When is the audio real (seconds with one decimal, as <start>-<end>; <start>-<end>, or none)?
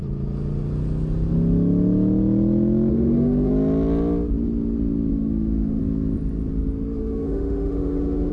0.0-2.9; 3.5-5.1; 5.8-7.0